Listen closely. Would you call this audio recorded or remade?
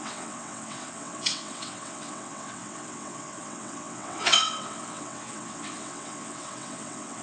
remade